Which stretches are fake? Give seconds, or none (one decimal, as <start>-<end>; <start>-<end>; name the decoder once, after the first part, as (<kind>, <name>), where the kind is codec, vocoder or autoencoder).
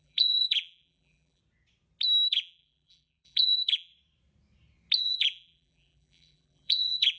0.0-1.4 (vocoder, BigVGAN v2); 2.3-3.9; 5.0-7.2